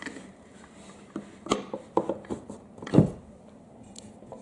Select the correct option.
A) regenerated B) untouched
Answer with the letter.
B